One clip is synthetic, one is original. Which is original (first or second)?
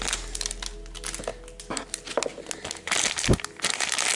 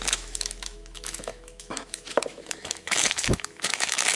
first